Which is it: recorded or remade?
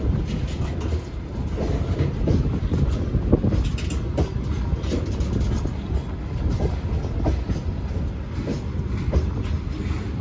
recorded